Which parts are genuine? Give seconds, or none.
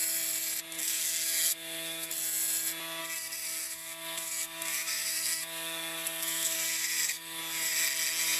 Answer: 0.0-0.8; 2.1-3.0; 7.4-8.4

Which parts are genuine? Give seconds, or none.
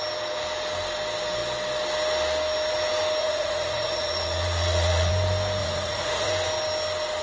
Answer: 0.0-3.2; 5.1-5.6; 6.3-7.2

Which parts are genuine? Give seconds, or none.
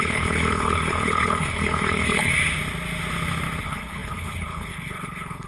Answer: 2.3-3.6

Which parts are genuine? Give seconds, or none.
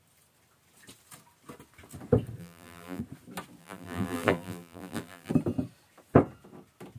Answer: 0.0-2.4; 3.0-3.6; 5.3-7.0